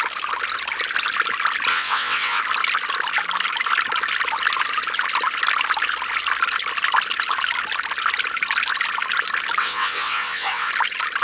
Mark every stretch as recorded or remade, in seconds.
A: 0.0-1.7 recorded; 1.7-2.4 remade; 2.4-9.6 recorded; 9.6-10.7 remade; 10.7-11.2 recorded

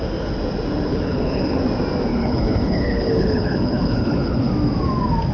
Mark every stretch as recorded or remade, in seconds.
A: 0.0-0.9 recorded; 0.9-1.6 remade; 1.6-2.1 recorded; 2.1-4.5 remade; 4.5-5.3 recorded

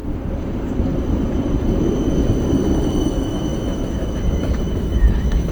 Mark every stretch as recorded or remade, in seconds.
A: 0.0-3.0 recorded; 3.0-5.5 remade

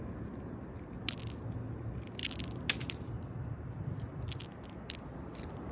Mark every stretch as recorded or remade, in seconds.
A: 0.0-5.7 recorded

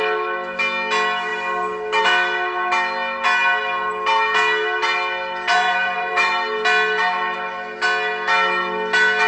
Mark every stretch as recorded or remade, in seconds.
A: 0.0-5.5 recorded; 5.5-6.3 remade; 6.3-9.3 recorded

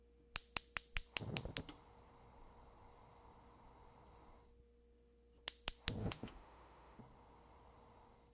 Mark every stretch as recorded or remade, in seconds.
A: 0.0-6.0 recorded; 6.0-7.0 remade; 7.0-8.3 recorded